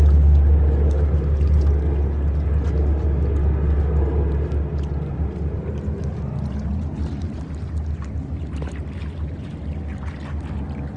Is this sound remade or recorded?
recorded